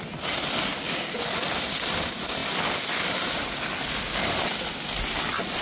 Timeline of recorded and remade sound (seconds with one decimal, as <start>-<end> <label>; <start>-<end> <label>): 0.0-5.6 recorded